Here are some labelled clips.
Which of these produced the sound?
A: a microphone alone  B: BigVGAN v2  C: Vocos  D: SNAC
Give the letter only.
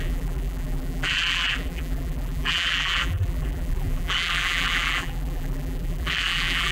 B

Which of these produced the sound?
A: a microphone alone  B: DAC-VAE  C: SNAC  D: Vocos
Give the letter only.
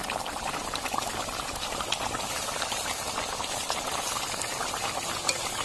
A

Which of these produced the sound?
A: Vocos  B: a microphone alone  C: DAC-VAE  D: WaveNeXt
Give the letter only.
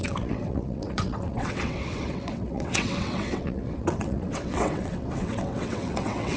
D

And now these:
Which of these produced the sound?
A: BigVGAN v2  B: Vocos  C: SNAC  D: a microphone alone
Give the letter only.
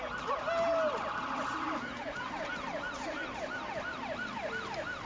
D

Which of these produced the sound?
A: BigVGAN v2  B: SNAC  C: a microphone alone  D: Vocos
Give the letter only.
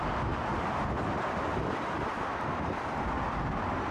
C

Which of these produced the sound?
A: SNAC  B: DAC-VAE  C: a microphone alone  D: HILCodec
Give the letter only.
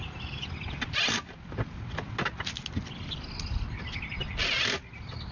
C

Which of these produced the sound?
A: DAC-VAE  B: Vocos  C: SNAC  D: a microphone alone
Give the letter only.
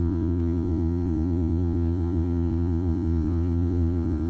B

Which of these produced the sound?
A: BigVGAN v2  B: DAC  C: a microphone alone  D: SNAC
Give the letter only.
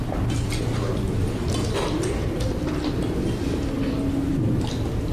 C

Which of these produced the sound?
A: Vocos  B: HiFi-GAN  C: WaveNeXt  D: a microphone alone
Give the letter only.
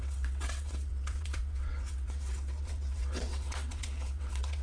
C